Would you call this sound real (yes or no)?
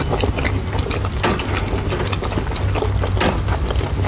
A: yes